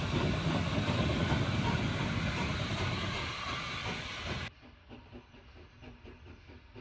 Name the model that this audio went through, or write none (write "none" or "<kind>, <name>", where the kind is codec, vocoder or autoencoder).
none